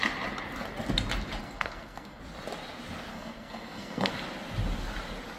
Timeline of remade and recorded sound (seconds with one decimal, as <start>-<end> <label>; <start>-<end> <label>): 0.0-1.4 recorded; 1.4-2.2 remade; 2.2-3.1 recorded; 3.1-4.1 remade; 4.1-5.4 recorded